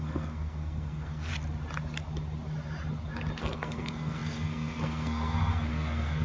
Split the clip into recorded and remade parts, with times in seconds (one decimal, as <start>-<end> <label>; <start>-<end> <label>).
0.0-1.3 remade; 1.3-3.4 recorded; 3.4-6.2 remade